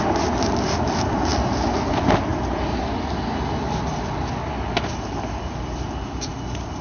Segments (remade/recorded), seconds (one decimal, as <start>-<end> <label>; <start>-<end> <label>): 0.0-6.8 recorded